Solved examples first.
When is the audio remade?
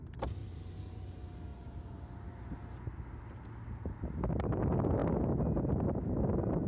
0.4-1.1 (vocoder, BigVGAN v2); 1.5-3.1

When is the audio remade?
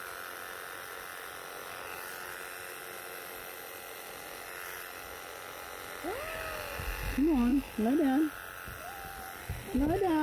none